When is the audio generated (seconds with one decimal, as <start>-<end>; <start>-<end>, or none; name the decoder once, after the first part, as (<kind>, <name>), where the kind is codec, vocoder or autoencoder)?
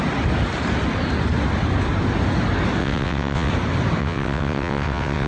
2.8-3.5 (vocoder, WaveNeXt); 4.0-5.3